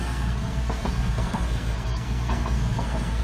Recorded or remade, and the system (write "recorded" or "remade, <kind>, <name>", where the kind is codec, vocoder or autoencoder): remade, codec, SNAC